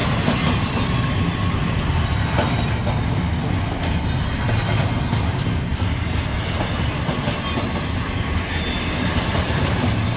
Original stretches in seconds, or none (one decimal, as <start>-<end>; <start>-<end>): 0.0-10.2